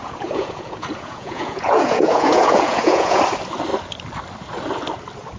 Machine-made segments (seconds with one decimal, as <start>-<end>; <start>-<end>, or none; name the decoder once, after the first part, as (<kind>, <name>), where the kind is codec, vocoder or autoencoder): 0.0-3.2 (vocoder, Vocos)